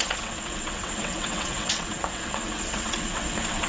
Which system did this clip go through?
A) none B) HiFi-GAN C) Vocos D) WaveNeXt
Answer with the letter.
D